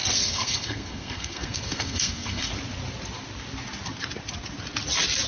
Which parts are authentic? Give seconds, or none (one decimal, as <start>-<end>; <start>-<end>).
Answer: 2.5-5.3